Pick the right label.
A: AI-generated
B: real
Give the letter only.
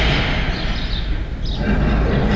B